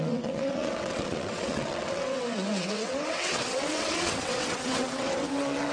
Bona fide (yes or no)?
no